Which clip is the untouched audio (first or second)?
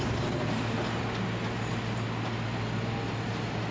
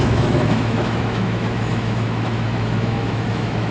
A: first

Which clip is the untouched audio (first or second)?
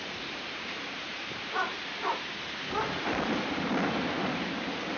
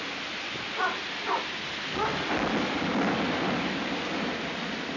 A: second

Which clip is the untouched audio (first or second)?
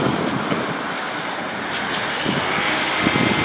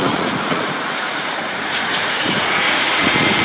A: first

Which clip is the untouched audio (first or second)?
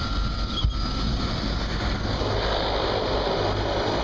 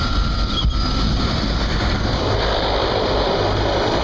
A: first